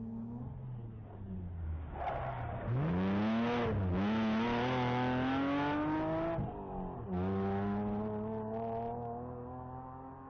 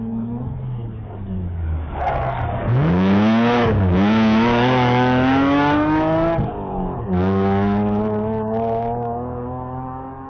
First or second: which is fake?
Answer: second